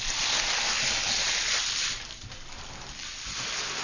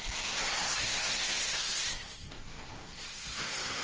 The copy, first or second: second